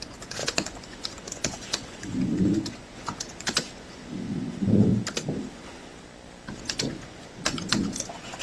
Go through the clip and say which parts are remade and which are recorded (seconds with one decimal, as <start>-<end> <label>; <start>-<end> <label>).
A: 0.0-4.9 remade; 4.9-5.5 recorded; 5.5-5.9 remade; 5.9-6.6 recorded; 6.6-8.4 remade